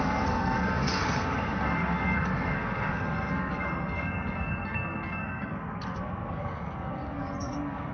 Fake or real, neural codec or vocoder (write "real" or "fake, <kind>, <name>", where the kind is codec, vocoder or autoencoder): fake, codec, SNAC